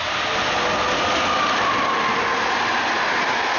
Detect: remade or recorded recorded